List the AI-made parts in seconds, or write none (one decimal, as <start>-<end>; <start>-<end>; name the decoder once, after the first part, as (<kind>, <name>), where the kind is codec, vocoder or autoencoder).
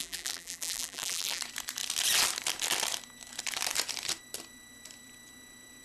0.0-1.4 (vocoder, BigVGAN v2)